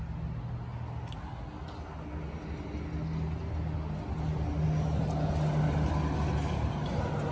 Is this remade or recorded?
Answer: recorded